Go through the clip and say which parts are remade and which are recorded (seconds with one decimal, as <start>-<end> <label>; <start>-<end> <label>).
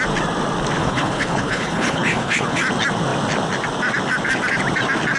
0.0-0.8 recorded; 0.8-2.6 remade; 2.6-5.2 recorded